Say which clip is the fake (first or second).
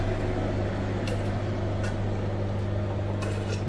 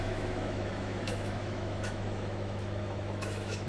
second